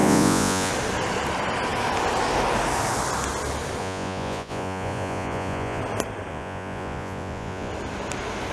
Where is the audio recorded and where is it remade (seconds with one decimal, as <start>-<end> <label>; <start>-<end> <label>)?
0.0-0.7 remade; 0.7-3.8 recorded; 3.8-5.8 remade; 5.8-6.3 recorded; 6.3-7.7 remade; 7.7-8.5 recorded